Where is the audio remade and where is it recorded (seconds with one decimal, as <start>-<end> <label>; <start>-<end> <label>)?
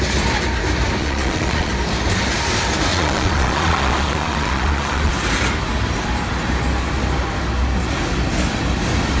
0.0-1.0 recorded; 1.0-1.7 remade; 1.7-2.9 recorded; 2.9-5.1 remade; 5.1-9.2 recorded